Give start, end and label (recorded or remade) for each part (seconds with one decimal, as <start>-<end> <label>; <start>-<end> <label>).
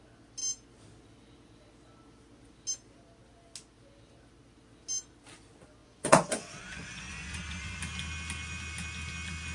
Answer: 0.0-5.8 recorded; 5.8-7.8 remade; 7.8-9.5 recorded